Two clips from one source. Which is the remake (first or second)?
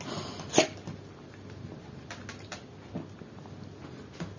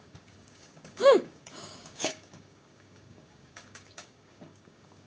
second